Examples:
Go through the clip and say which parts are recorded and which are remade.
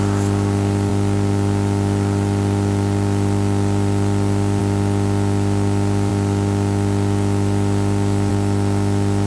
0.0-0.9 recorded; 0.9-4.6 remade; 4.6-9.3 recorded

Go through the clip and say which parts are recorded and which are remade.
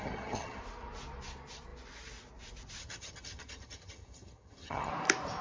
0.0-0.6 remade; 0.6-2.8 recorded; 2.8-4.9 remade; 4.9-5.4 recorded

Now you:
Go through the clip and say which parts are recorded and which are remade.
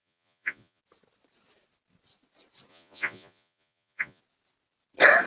0.0-0.8 remade; 0.8-2.7 recorded; 2.7-4.2 remade; 4.2-5.3 recorded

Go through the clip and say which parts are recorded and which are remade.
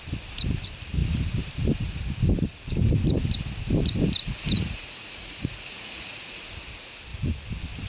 0.0-4.6 recorded; 4.6-6.4 remade; 6.4-7.9 recorded